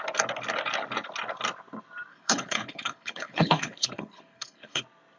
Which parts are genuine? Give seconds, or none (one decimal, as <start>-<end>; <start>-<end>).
0.0-2.1; 4.8-5.2